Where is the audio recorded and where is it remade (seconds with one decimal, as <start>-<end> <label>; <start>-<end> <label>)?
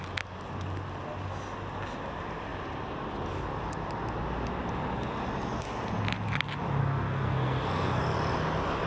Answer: 0.0-6.8 recorded; 6.8-8.0 remade; 8.0-8.9 recorded